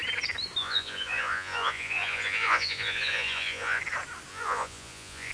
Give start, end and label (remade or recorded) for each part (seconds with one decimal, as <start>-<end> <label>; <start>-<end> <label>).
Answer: 0.0-0.6 recorded; 0.6-3.8 remade; 3.8-4.3 recorded; 4.3-5.3 remade